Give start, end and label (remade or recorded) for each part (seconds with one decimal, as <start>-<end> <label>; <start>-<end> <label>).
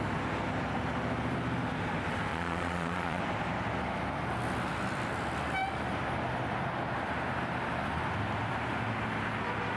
0.0-2.3 recorded; 2.3-3.2 remade; 3.2-9.8 recorded